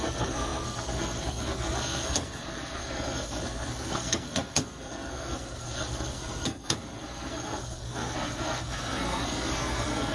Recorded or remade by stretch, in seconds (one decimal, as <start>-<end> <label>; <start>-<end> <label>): 0.0-10.1 remade